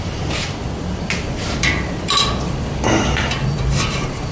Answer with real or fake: fake